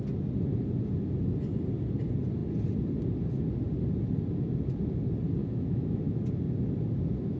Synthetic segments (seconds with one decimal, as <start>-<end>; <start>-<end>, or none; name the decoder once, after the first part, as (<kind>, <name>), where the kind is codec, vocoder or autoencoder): 5.4-6.2 (autoencoder, DAC-VAE)